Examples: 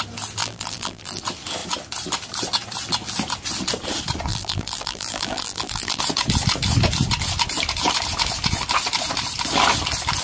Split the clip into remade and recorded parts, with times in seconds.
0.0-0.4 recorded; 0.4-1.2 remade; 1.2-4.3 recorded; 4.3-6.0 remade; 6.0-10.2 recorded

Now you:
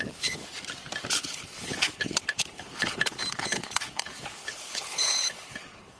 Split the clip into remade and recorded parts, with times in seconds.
0.0-0.4 remade; 0.4-1.1 recorded; 1.1-6.0 remade

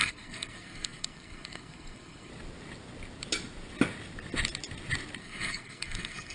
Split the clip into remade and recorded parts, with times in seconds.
0.0-2.3 remade; 2.3-5.2 recorded; 5.2-6.3 remade

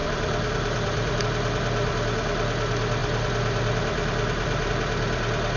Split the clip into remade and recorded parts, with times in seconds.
0.0-1.2 remade; 1.2-3.0 recorded; 3.0-4.7 remade; 4.7-5.6 recorded

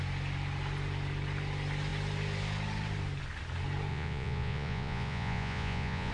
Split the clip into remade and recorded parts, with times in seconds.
0.0-3.9 recorded; 3.9-6.1 remade

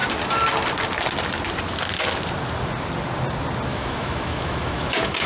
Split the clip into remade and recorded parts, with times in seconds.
0.0-3.7 recorded; 3.7-5.3 remade